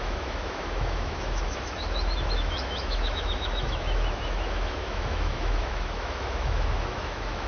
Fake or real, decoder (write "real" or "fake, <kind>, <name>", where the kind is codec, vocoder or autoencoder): fake, autoencoder, DAC-VAE